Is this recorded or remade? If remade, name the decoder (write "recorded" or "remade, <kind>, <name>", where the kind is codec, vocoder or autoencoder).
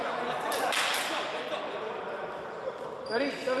recorded